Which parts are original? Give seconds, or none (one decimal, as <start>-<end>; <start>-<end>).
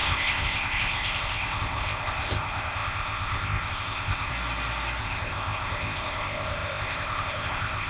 4.3-5.0